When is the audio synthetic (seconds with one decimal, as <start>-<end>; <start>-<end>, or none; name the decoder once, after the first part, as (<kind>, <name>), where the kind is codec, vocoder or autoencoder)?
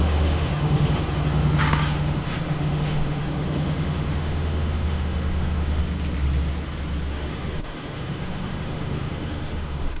0.0-5.8 (autoencoder, DAC-VAE); 7.1-10.0